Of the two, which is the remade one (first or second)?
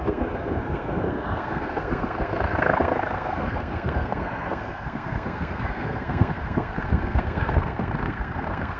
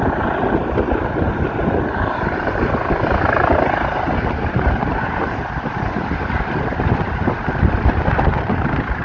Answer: first